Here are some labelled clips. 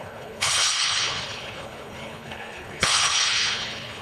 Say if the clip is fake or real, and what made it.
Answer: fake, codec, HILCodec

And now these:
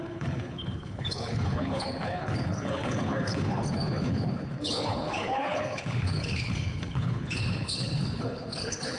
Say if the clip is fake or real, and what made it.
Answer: fake, codec, HILCodec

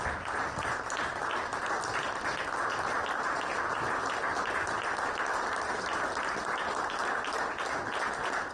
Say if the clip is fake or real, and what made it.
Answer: real